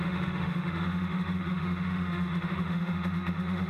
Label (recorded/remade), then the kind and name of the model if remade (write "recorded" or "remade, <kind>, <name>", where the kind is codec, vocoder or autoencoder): remade, autoencoder, DAC-VAE